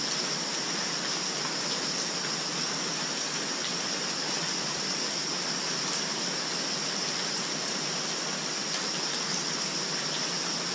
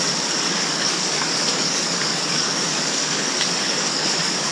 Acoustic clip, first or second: first